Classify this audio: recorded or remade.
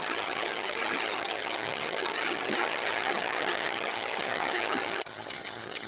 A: remade